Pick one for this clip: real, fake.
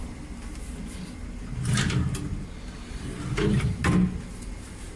real